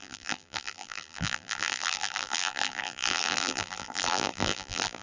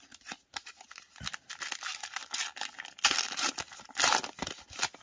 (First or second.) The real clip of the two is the second